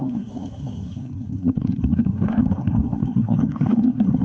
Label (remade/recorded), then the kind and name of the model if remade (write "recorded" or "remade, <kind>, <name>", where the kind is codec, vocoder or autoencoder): remade, codec, SNAC